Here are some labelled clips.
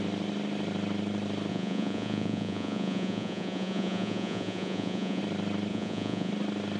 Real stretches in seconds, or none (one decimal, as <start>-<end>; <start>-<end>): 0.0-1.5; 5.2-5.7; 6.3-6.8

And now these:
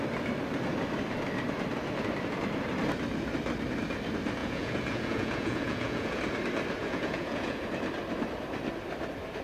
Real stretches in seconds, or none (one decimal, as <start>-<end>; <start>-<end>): 0.0-4.4; 6.2-6.8; 7.7-9.4

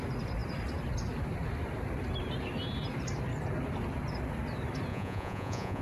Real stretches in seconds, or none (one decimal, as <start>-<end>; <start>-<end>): 0.0-4.9

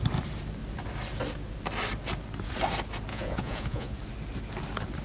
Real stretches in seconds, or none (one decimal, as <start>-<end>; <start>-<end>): 0.0-3.1; 4.0-5.0

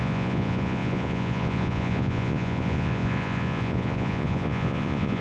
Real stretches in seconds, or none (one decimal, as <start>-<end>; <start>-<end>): none